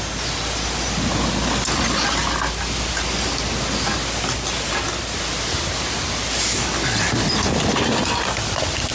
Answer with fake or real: real